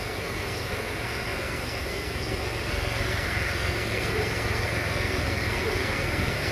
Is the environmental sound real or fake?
fake